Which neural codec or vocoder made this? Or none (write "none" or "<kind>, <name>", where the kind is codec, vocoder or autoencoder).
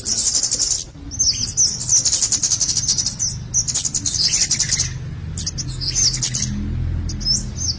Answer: none